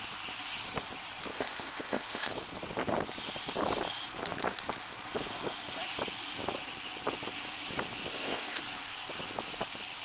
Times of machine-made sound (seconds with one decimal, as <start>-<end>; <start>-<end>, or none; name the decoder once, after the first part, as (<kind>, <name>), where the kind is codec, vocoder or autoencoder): 1.3-2.3 (codec, ZipCodec); 8.1-8.6